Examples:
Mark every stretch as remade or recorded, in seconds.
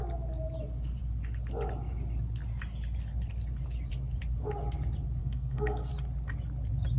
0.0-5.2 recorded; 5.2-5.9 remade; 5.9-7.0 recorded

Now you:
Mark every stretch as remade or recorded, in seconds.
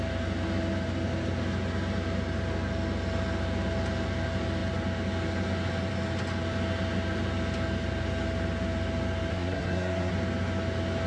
0.0-9.3 recorded; 9.3-10.1 remade; 10.1-11.1 recorded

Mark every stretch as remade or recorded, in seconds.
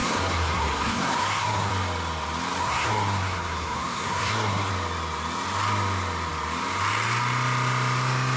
0.0-1.7 remade; 1.7-2.6 recorded; 2.6-4.7 remade; 4.7-8.4 recorded